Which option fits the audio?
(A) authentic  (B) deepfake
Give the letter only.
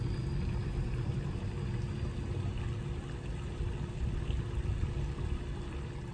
A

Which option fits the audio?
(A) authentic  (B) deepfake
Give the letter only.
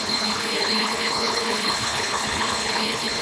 B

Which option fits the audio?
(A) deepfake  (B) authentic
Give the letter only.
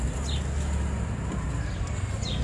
B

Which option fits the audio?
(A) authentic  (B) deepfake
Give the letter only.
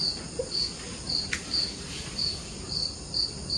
A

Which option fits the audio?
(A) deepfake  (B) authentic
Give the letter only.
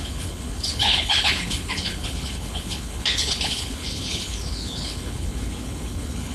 A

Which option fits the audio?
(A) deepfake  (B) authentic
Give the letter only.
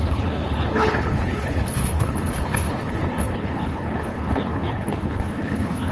A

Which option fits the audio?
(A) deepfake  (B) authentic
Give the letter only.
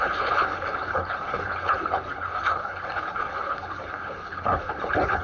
A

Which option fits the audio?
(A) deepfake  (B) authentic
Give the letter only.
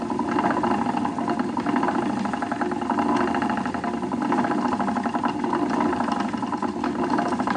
B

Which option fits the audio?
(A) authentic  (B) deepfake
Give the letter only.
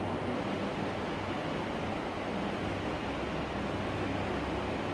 A